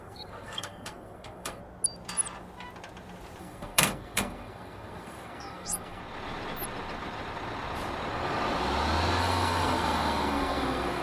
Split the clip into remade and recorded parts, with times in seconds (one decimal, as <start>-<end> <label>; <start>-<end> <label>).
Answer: 0.0-1.6 remade; 1.6-3.4 recorded; 3.4-6.0 remade; 6.0-9.2 recorded; 9.2-11.0 remade